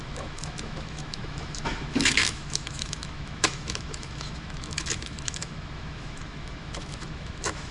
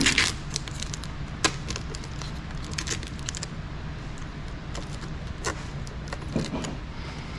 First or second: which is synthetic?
first